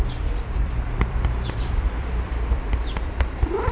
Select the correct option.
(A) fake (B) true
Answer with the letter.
A